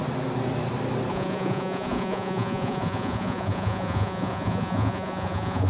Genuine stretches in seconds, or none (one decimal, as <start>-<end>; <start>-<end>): 0.0-1.1